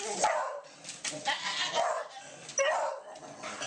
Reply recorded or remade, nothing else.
recorded